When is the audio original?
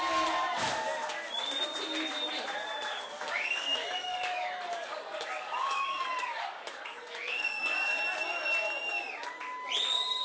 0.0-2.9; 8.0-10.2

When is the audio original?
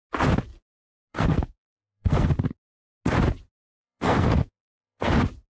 0.0-1.1; 2.3-3.8; 5.1-5.6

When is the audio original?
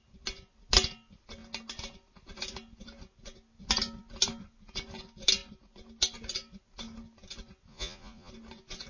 0.0-7.7; 8.3-8.9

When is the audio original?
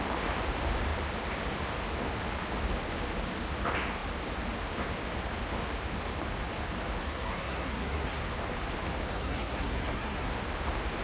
0.0-7.0; 8.3-9.1; 10.3-11.0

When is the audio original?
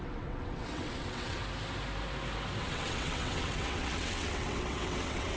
1.4-2.6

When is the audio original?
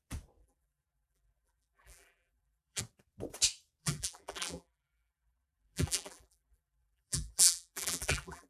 0.0-0.4; 2.8-3.8